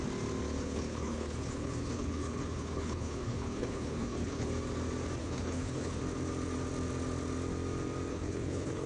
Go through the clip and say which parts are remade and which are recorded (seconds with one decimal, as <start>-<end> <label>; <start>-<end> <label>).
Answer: 0.0-0.6 recorded; 0.6-4.5 remade; 4.5-5.2 recorded; 5.2-6.0 remade; 6.0-8.1 recorded; 8.1-8.9 remade